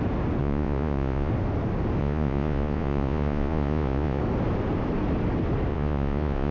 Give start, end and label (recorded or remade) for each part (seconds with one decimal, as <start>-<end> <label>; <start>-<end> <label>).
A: 0.0-0.4 recorded; 0.4-1.3 remade; 1.3-2.0 recorded; 2.0-4.2 remade; 4.2-5.7 recorded; 5.7-6.5 remade